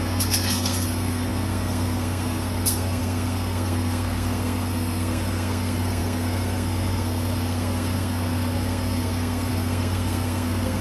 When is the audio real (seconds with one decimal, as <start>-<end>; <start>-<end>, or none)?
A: none